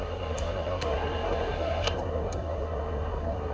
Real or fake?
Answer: fake